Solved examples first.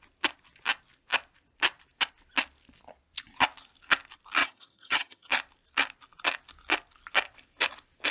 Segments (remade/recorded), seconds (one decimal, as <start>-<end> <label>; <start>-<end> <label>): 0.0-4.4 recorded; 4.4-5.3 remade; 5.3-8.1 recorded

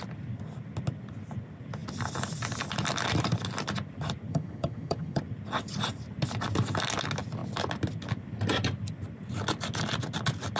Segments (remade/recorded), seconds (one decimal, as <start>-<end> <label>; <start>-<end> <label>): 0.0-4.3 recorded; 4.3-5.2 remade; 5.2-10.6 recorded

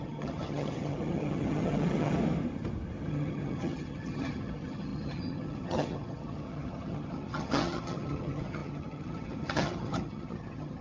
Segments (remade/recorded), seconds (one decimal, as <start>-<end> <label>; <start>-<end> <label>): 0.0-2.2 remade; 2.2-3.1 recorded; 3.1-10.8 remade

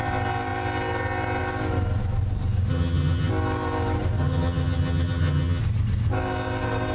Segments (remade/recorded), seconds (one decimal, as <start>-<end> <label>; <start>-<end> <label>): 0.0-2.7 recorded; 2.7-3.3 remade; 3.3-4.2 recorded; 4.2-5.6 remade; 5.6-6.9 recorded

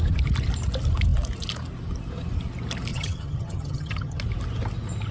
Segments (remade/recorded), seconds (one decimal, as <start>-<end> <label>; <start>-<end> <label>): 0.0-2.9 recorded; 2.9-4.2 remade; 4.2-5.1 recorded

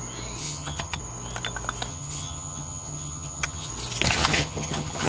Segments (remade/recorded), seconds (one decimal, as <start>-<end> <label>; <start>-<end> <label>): 0.0-0.4 recorded; 0.4-1.0 remade; 1.0-1.9 recorded; 1.9-3.7 remade; 3.7-4.2 recorded; 4.2-5.1 remade

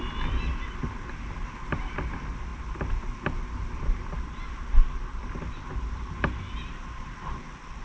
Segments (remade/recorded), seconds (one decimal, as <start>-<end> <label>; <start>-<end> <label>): 0.0-7.8 recorded